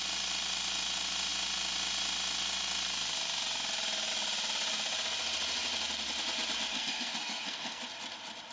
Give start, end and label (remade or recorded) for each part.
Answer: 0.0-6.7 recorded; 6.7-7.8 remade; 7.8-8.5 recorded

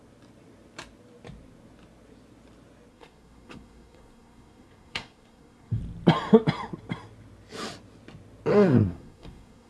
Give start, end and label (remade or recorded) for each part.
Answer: 0.0-2.9 recorded; 2.9-5.8 remade; 5.8-8.5 recorded; 8.5-9.7 remade

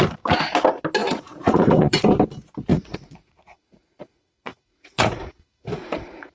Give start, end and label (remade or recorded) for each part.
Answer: 0.0-1.0 recorded; 1.0-2.0 remade; 2.0-2.7 recorded; 2.7-6.3 remade